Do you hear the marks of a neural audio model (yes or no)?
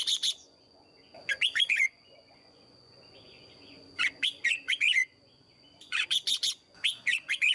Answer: yes